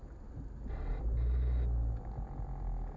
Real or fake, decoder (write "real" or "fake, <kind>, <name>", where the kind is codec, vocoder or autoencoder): real